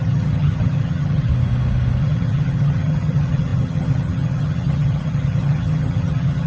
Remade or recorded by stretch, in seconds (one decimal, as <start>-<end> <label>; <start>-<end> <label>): 0.0-1.3 remade; 1.3-2.0 recorded; 2.0-6.5 remade